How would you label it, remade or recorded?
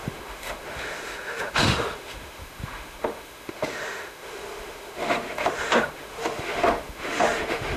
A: remade